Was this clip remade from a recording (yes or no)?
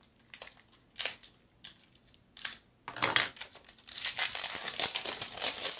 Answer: no